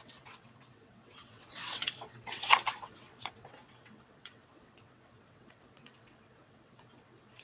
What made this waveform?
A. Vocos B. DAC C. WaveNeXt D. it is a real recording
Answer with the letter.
C